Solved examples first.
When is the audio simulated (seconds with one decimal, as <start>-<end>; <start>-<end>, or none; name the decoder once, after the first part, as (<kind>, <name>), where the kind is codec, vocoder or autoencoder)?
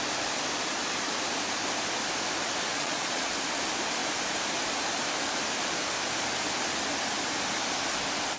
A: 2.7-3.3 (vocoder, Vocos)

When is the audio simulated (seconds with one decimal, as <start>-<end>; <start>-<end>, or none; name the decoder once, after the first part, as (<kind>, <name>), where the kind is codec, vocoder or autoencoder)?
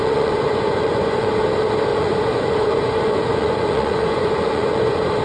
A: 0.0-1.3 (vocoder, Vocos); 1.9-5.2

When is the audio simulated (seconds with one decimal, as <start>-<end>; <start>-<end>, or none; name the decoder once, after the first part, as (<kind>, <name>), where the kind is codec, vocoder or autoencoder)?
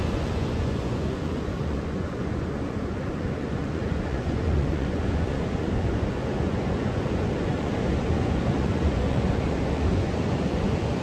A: 0.0-11.0 (vocoder, Vocos)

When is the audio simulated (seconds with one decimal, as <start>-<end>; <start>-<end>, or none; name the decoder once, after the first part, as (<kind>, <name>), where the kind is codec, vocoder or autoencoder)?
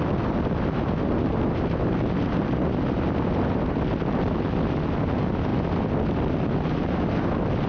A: none